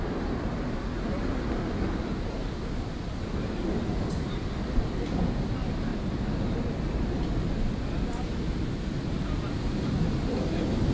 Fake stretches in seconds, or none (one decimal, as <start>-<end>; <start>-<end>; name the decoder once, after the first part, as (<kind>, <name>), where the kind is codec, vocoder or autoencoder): none

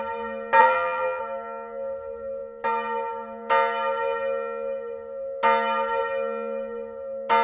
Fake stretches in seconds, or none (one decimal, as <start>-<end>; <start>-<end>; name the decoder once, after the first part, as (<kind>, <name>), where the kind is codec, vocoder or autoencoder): 0.6-1.2 (vocoder, BigVGAN v2)

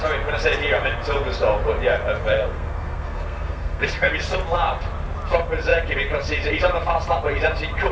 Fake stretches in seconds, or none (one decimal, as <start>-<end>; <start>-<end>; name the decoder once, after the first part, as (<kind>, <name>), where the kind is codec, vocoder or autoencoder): 2.3-4.1 (codec, SNAC)

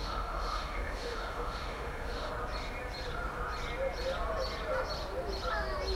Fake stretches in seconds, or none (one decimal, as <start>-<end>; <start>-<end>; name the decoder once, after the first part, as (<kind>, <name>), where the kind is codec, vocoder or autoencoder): 0.0-2.3 (autoencoder, DAC-VAE)

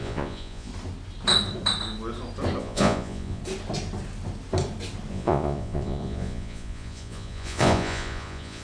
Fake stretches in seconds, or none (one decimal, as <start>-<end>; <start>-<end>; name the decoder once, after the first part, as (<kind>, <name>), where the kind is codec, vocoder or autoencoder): 0.0-0.7 (vocoder, Vocos); 2.6-3.4; 5.1-8.6

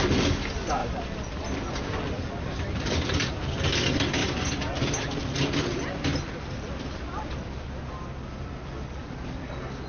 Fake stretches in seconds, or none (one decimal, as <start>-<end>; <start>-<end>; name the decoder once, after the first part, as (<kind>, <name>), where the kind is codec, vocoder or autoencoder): 0.8-3.6 (vocoder, BigVGAN v2); 9.0-9.5

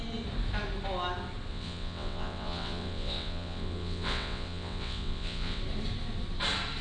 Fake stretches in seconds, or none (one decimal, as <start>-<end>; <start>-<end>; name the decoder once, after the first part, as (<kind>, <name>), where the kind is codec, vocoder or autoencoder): 1.5-5.6 (vocoder, WaveNeXt)